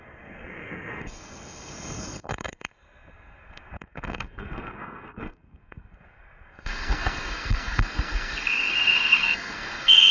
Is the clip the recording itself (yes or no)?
no